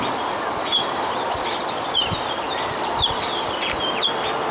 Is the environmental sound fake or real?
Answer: real